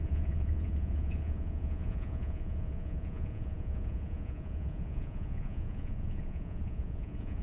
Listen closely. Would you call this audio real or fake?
fake